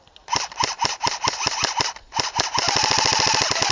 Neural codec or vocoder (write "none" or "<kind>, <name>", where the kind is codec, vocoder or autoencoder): none